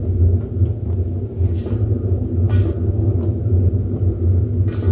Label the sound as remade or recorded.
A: recorded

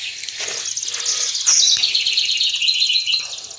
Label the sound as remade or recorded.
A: recorded